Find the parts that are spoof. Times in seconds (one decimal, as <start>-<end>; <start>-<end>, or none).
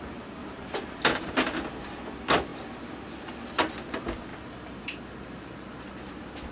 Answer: 0.4-1.4; 4.3-6.1